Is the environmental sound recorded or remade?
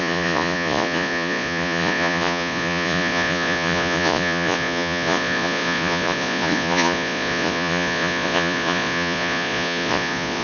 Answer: remade